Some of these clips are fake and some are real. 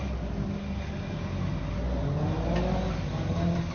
real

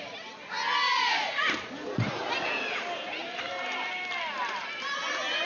real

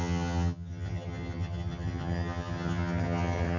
fake